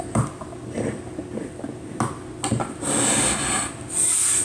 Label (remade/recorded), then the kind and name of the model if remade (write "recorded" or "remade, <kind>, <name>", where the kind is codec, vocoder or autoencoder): recorded